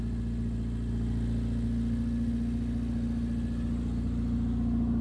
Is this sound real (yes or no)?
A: yes